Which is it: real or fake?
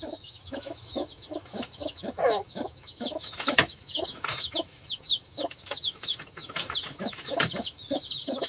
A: fake